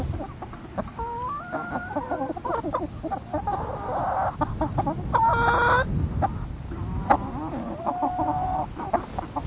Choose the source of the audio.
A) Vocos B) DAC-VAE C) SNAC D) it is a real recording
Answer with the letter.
D